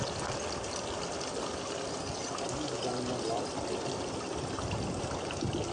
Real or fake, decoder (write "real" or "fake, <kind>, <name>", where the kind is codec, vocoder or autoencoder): real